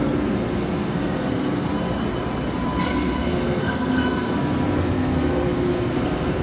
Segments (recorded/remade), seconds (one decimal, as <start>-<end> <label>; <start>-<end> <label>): 0.0-1.7 remade; 1.7-2.8 recorded; 2.8-6.4 remade